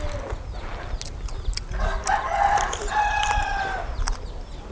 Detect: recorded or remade recorded